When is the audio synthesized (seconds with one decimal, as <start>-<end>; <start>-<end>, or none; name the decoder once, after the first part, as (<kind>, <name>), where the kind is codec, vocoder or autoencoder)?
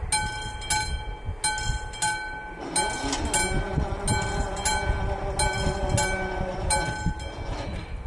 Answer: none